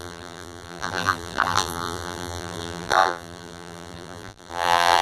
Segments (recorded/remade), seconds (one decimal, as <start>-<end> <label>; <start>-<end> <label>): 0.0-5.0 remade